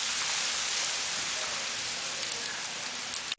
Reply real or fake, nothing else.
real